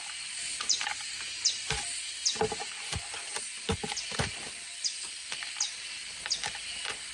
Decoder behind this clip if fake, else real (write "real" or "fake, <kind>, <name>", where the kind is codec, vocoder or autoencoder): real